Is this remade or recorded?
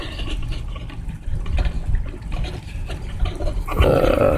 recorded